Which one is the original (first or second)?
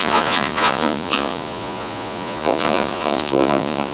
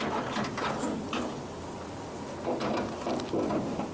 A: second